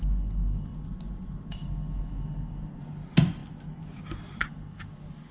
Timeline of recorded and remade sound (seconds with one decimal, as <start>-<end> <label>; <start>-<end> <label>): 0.0-5.3 recorded